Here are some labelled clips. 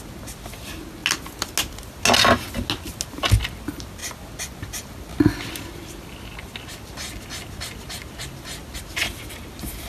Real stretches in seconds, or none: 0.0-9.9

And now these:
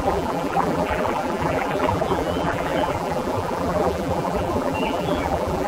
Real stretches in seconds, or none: none

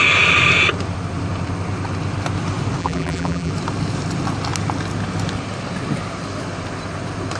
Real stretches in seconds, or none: 0.0-2.8; 3.5-7.4

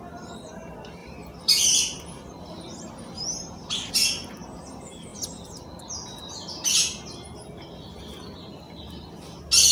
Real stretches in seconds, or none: 0.0-1.0; 3.9-9.7

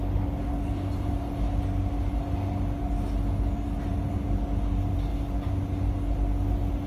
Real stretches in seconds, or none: 0.0-6.9